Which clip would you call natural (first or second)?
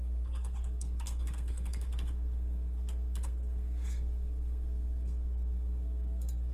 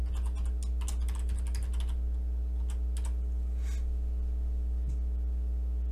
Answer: second